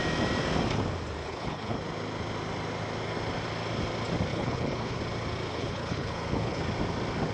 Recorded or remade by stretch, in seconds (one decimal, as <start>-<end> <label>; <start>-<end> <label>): 0.0-1.2 recorded; 1.2-1.8 remade; 1.8-4.3 recorded; 4.3-5.0 remade; 5.0-5.5 recorded; 5.5-6.6 remade; 6.6-7.3 recorded